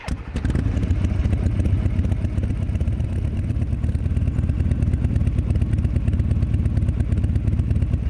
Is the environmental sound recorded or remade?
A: recorded